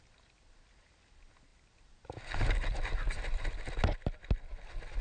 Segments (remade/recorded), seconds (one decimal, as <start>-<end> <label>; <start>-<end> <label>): 0.0-5.0 recorded